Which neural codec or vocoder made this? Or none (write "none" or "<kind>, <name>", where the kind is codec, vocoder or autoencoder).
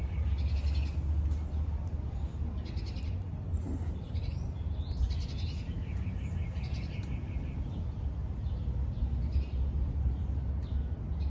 none